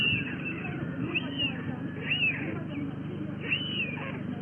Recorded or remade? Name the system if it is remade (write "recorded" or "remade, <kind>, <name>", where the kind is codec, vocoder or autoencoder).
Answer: recorded